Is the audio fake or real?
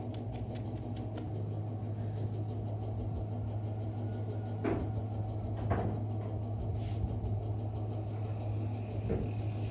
real